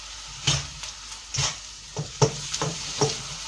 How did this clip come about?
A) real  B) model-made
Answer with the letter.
A